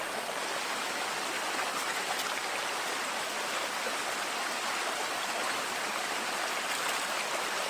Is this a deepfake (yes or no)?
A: no